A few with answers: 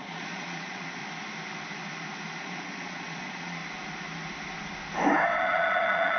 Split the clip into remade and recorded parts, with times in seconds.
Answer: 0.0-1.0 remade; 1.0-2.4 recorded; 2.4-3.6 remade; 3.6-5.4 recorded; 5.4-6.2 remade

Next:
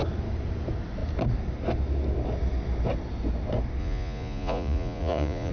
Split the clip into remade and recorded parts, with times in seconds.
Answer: 0.0-3.8 recorded; 3.8-5.5 remade

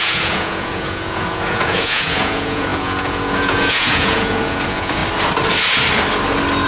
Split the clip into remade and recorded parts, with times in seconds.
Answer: 0.0-5.0 remade; 5.0-6.7 recorded

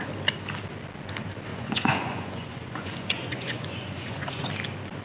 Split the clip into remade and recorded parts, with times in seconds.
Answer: 0.0-1.5 recorded; 1.5-4.5 remade; 4.5-5.0 recorded

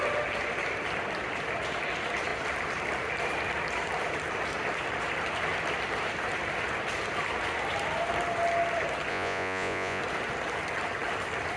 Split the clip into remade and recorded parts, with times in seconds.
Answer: 0.0-9.1 recorded; 9.1-10.0 remade; 10.0-11.6 recorded

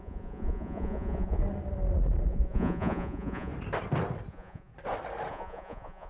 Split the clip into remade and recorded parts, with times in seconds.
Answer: 0.0-1.4 remade; 1.4-2.3 recorded; 2.3-3.5 remade; 3.5-4.3 recorded; 4.3-4.7 remade; 4.7-5.3 recorded; 5.3-6.1 remade

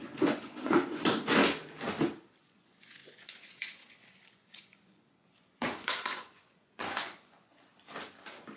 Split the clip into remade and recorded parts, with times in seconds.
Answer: 0.0-1.4 remade; 1.4-2.4 recorded; 2.4-7.7 remade; 7.7-8.6 recorded

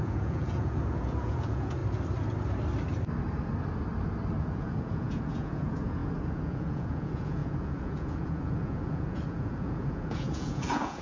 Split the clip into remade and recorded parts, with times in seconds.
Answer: 0.0-1.8 remade; 1.8-4.4 recorded; 4.4-11.0 remade